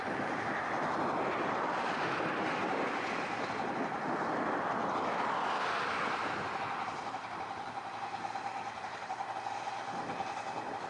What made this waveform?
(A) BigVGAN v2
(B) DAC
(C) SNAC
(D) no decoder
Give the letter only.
D